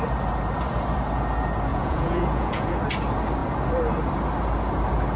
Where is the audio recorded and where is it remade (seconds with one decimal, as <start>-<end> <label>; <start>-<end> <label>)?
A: 0.0-1.7 recorded; 1.7-2.7 remade; 2.7-5.2 recorded